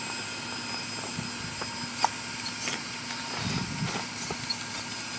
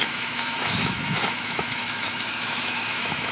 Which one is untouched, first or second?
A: first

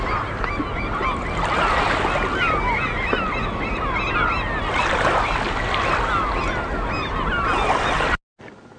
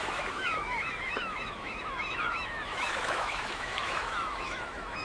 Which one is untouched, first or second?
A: first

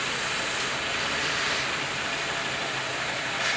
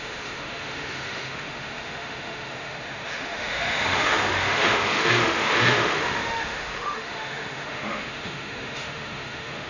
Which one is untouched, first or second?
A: first